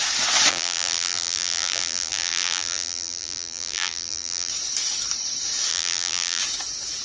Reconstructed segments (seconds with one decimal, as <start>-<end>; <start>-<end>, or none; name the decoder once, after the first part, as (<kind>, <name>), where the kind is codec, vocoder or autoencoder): 0.5-4.5 (vocoder, BigVGAN v2); 5.7-6.4